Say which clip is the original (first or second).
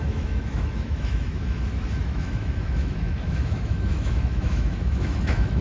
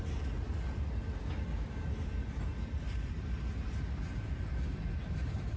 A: second